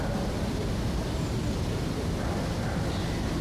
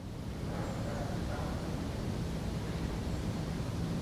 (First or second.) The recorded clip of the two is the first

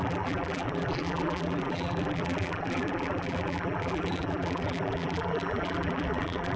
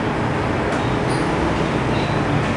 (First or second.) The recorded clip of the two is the second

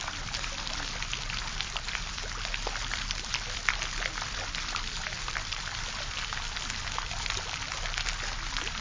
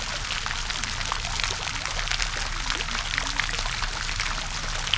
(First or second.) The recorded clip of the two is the second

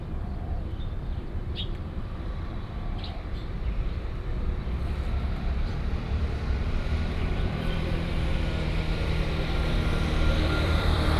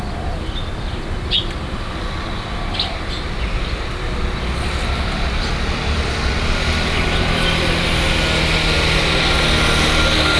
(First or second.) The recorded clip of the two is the second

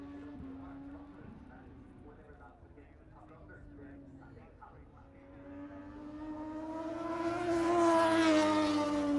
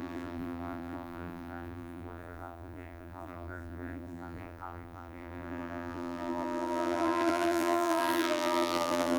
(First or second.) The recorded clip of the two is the first